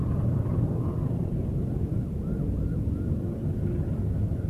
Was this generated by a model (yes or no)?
yes